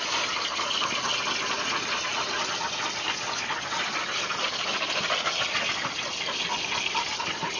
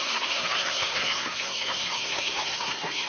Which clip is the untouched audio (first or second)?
first